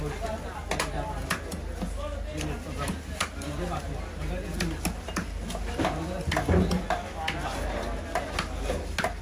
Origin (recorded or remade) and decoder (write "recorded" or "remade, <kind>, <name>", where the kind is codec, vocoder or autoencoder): recorded